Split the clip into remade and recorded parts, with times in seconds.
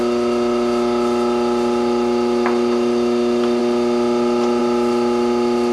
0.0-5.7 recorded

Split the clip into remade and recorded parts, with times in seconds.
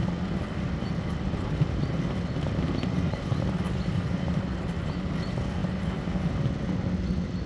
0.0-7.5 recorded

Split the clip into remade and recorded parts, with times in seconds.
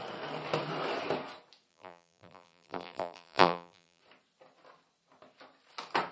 0.0-1.7 recorded; 1.7-4.0 remade; 4.0-6.1 recorded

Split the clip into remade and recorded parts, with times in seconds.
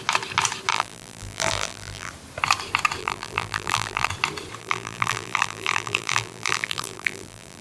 0.0-0.7 recorded; 0.7-2.1 remade; 2.1-3.0 recorded; 3.0-4.1 remade; 4.1-4.6 recorded; 4.6-7.6 remade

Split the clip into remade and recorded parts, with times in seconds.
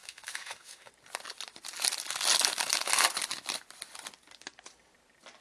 0.0-0.9 remade; 0.9-5.4 recorded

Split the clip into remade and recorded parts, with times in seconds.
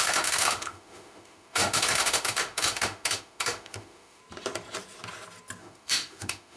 0.0-4.2 remade; 4.2-5.6 recorded; 5.6-6.6 remade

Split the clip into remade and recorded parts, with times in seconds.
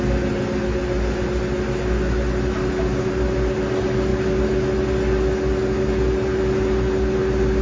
0.0-7.6 recorded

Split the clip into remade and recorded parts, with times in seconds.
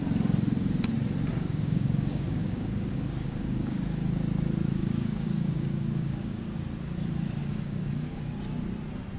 0.0-1.3 recorded; 1.3-3.8 remade; 3.8-4.8 recorded; 4.8-6.4 remade; 6.4-7.4 recorded; 7.4-8.2 remade; 8.2-9.2 recorded